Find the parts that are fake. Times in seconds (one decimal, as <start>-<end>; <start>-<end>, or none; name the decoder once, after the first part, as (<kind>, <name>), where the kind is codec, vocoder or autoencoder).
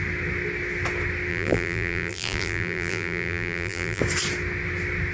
1.3-4.0 (vocoder, BigVGAN v2)